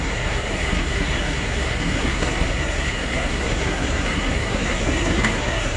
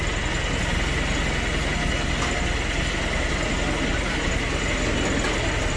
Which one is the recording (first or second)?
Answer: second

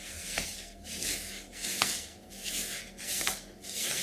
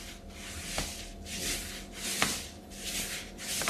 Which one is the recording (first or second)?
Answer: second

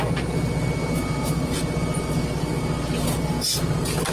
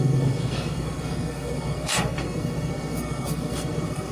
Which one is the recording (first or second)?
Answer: first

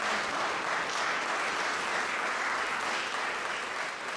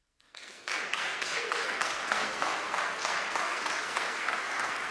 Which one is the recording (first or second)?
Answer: first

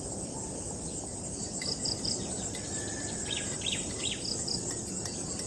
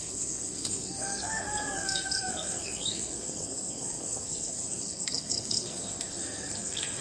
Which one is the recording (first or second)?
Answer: first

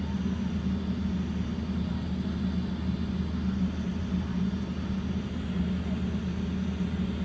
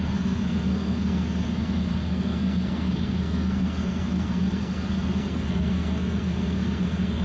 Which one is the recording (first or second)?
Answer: first